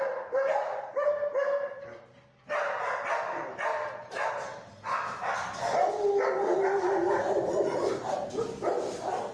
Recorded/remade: recorded